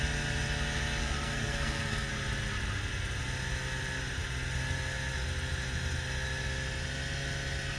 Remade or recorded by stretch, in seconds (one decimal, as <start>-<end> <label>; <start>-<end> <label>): 0.0-1.0 recorded; 1.0-2.1 remade; 2.1-7.8 recorded